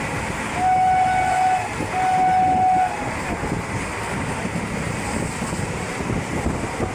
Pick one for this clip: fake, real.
real